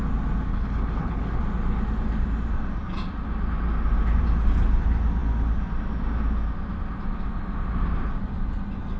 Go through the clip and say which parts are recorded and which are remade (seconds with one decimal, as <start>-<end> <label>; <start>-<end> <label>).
0.0-0.5 recorded; 0.5-1.4 remade; 1.4-9.0 recorded